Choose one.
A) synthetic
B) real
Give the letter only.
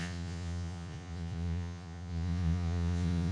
A